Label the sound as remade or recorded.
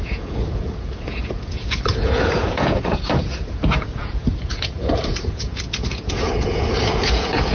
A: remade